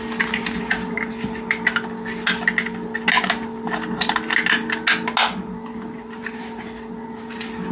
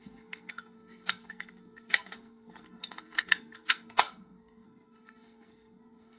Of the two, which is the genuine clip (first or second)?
first